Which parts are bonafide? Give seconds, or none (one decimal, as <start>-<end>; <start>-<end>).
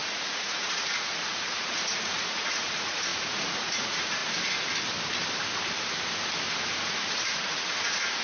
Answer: 4.2-6.9